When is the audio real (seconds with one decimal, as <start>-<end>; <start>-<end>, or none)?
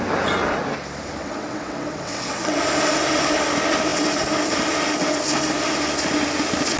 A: 0.0-1.2; 2.6-6.8